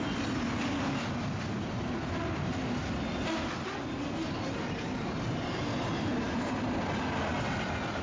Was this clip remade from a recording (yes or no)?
no